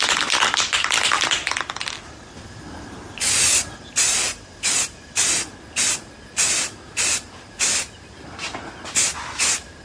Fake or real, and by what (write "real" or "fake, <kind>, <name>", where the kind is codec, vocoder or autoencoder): real